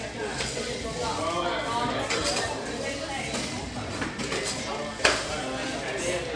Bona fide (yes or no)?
yes